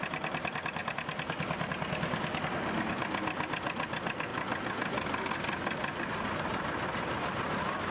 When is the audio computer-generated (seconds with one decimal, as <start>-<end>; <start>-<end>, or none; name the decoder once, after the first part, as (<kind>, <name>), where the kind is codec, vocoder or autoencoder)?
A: none